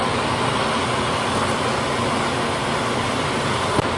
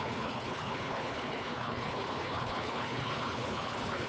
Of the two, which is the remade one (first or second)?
second